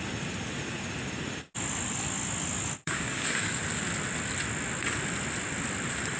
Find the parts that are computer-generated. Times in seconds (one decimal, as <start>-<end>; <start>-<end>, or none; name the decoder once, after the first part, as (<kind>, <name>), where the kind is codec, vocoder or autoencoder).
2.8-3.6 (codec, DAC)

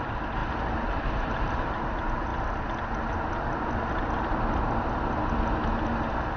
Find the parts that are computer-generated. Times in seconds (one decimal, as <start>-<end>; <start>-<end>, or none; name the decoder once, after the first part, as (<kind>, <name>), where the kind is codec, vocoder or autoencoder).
none

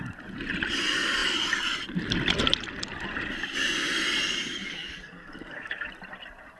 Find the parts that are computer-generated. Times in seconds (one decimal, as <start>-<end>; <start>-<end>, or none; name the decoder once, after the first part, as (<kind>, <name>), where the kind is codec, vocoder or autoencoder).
4.4-5.9 (codec, DAC)